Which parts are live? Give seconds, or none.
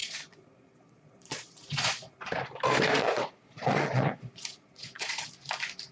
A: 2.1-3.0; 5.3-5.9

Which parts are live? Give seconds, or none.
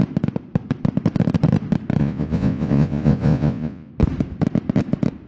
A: 0.0-2.0; 3.9-5.3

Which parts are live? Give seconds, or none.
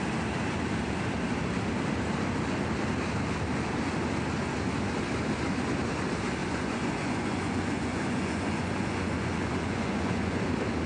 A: 0.0-6.4; 10.5-10.9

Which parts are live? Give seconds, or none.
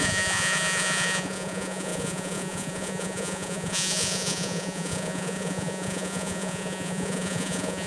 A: none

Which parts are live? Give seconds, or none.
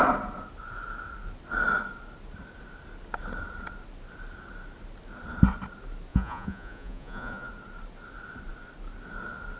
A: 0.0-6.1; 7.5-9.6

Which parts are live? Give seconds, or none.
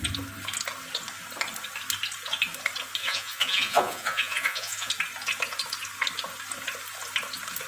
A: 0.0-3.0; 4.9-7.7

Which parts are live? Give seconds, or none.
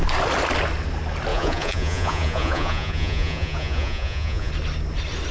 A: 0.0-1.3; 4.5-5.3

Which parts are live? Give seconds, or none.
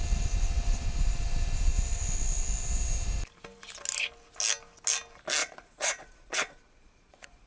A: 0.0-5.4